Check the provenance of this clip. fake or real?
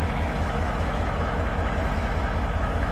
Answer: fake